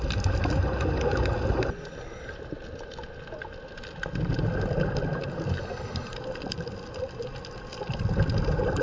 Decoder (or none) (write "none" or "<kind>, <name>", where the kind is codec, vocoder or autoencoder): none